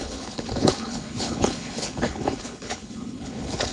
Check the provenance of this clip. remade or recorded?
remade